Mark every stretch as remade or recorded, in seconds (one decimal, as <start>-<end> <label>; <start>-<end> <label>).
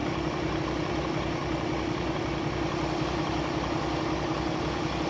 0.0-5.1 recorded